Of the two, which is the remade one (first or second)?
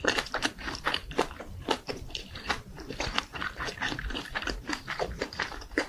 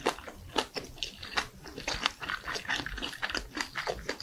first